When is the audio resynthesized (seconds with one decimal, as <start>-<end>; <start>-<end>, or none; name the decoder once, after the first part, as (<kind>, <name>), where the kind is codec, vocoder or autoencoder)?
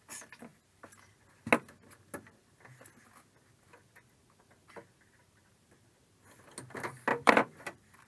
7.1-8.1 (vocoder, BigVGAN v2)